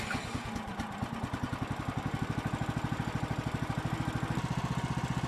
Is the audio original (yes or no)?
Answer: yes